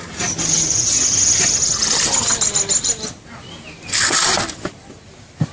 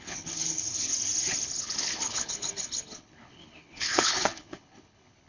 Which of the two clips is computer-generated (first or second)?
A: second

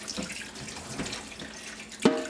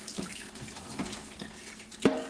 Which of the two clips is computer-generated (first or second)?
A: second